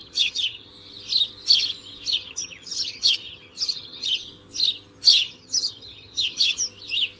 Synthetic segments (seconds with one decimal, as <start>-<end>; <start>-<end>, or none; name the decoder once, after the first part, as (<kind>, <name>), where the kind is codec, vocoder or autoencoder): 0.0-0.7 (vocoder, HiFi-GAN); 2.1-4.2; 5.1-6.6